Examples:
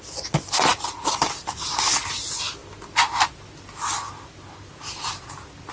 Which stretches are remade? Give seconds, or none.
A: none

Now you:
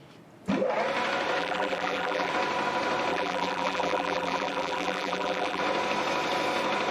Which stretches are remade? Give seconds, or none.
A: 1.4-2.3 (vocoder, BigVGAN v2); 3.1-5.6

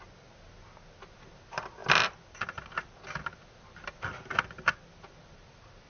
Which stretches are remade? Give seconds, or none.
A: none

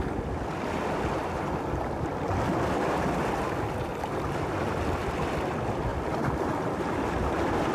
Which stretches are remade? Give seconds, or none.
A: 5.9-7.7 (vocoder, BigVGAN v2)

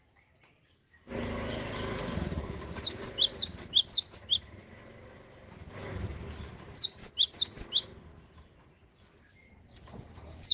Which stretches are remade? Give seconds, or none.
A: 0.0-2.0 (vocoder, BigVGAN v2); 6.1-7.0; 10.0-10.5

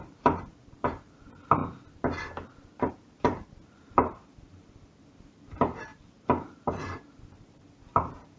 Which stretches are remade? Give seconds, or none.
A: 0.0-1.6 (vocoder, BigVGAN v2); 2.9-8.4

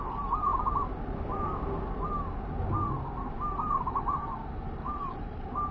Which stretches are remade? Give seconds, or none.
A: 0.0-0.5 (vocoder, BigVGAN v2); 3.6-5.7